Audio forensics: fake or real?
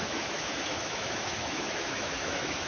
fake